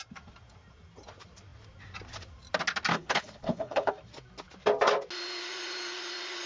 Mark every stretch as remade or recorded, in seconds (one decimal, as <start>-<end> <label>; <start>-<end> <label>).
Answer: 0.0-2.9 recorded; 2.9-3.9 remade; 3.9-6.5 recorded